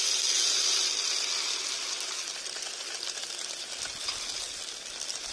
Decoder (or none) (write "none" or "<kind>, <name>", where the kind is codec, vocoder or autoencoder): none